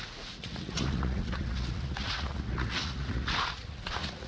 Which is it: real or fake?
fake